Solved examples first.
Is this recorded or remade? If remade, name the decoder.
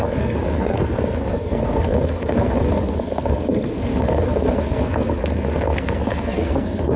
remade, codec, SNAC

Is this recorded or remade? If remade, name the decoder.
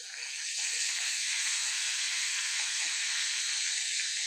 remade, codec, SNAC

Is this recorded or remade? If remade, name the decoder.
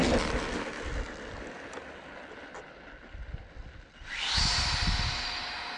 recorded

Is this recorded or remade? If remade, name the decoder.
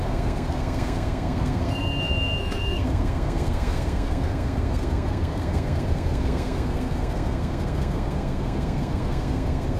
remade, codec, SNAC